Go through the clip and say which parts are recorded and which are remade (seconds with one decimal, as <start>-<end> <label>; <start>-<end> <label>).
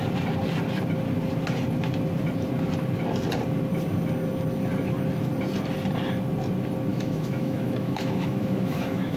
0.0-6.9 recorded; 6.9-9.2 remade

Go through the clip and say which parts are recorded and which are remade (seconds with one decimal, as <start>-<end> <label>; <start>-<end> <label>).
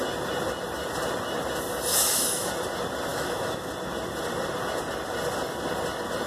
0.0-1.9 recorded; 1.9-2.5 remade; 2.5-3.1 recorded; 3.1-3.7 remade; 3.7-6.3 recorded